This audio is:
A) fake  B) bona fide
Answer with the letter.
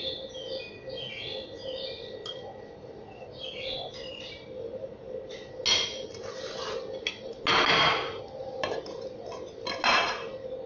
B